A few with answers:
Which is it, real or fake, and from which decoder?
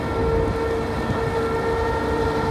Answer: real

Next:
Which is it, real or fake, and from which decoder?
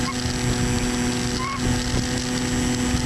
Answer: real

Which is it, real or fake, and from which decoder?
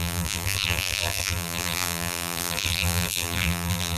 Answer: fake, vocoder, BigVGAN v2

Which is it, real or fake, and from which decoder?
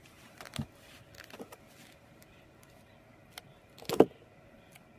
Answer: real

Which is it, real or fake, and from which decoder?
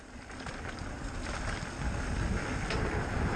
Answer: real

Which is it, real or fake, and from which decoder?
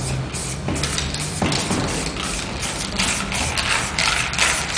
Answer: real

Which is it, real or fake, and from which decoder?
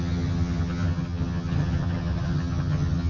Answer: fake, vocoder, HiFi-GAN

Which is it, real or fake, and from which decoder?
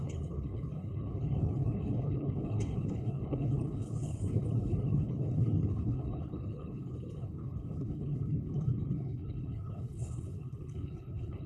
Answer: fake, codec, HILCodec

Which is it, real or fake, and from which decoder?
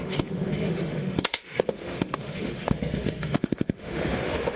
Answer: fake, autoencoder, DAC-VAE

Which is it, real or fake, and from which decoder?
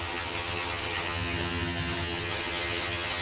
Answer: fake, vocoder, HiFi-GAN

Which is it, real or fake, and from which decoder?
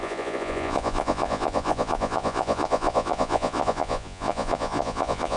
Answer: fake, vocoder, Vocos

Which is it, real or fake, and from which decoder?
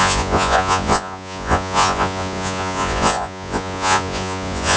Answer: fake, vocoder, Vocos